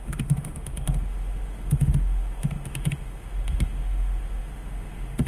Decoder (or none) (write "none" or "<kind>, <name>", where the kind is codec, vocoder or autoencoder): autoencoder, DAC-VAE